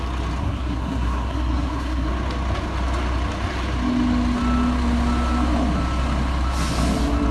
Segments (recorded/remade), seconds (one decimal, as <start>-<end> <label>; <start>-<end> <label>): 0.0-0.4 recorded; 0.4-2.1 remade; 2.1-7.3 recorded